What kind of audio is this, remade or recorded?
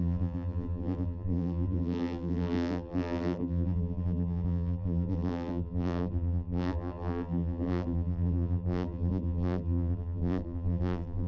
remade